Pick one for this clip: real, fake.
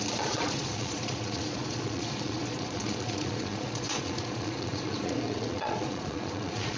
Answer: fake